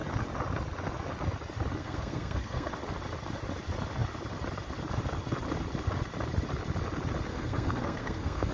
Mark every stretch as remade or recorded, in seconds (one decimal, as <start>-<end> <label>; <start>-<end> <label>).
0.0-1.8 recorded; 1.8-2.7 remade; 2.7-7.3 recorded; 7.3-8.5 remade